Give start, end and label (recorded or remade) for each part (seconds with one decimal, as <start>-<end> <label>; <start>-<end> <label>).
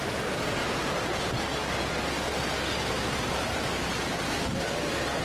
0.0-0.6 recorded; 0.6-1.2 remade; 1.2-2.3 recorded; 2.3-4.3 remade; 4.3-5.2 recorded